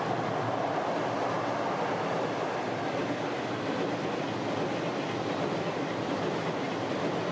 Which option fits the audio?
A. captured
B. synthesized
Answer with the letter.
A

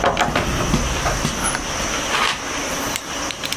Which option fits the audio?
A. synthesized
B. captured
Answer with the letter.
B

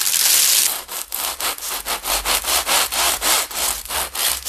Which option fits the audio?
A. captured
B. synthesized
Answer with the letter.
A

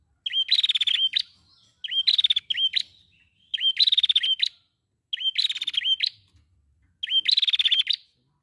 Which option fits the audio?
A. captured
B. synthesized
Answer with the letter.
A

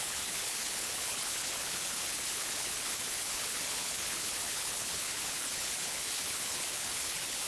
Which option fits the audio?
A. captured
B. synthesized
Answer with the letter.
B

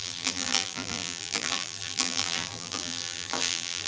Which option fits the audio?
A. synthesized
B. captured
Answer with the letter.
A